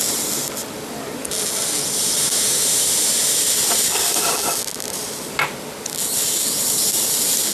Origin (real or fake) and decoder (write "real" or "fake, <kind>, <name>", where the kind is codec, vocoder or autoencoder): real